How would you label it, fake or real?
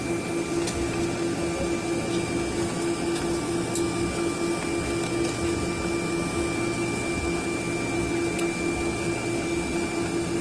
real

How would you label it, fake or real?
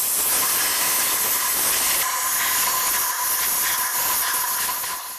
real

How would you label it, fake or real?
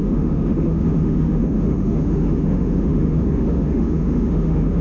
fake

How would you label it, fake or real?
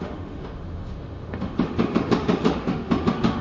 fake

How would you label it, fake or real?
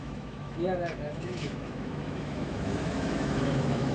fake